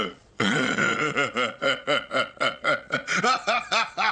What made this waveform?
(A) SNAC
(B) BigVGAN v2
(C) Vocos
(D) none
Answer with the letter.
C